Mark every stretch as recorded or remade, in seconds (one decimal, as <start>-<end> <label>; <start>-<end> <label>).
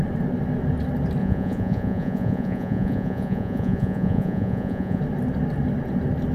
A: 0.0-1.2 recorded; 1.2-5.0 remade; 5.0-6.3 recorded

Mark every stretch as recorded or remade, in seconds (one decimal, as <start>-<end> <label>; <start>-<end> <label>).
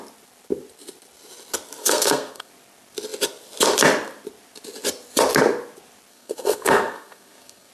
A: 0.0-1.8 recorded; 1.8-2.5 remade; 2.5-6.1 recorded; 6.1-7.7 remade